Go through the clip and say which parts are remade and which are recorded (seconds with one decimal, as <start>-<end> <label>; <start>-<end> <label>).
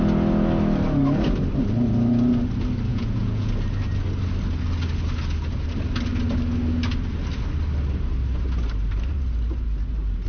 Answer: 0.0-2.9 recorded; 2.9-3.5 remade; 3.5-10.3 recorded